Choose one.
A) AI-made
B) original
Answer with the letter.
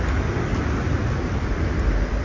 A